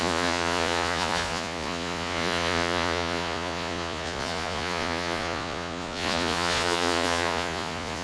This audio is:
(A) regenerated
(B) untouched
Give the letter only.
A